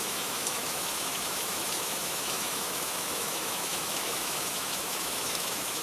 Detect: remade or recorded remade